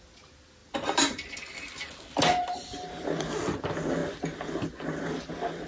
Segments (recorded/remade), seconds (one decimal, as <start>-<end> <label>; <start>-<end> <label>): 0.0-5.7 recorded